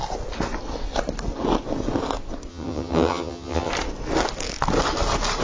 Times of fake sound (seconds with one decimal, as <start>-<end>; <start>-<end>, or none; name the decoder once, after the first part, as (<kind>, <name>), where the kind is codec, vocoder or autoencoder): 2.5-3.7 (vocoder, HiFi-GAN)